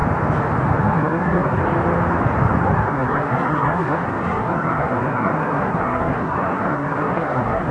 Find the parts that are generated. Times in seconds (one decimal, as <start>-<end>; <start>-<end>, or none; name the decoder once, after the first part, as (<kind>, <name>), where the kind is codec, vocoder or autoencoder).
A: 0.8-1.6 (codec, SNAC); 2.6-7.7